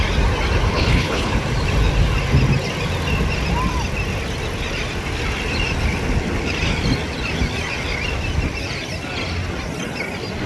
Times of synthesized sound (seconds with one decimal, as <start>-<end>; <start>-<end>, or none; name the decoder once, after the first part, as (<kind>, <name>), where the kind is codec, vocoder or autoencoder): 0.7-1.3 (codec, HILCodec)